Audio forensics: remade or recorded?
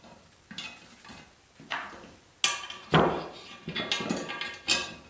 recorded